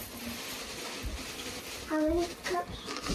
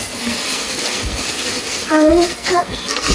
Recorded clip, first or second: first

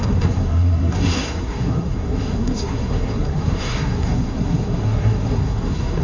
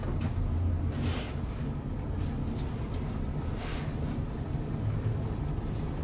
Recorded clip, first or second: second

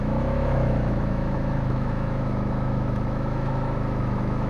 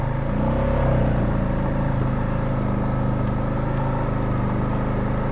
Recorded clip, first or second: second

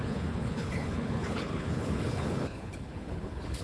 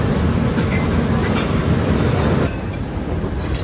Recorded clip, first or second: second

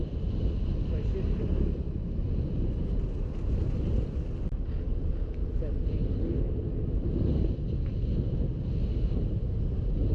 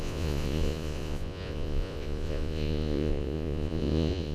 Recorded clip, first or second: first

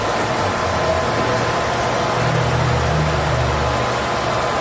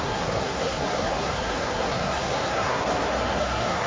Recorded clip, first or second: first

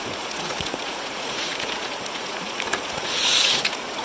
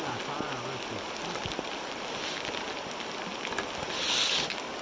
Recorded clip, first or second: second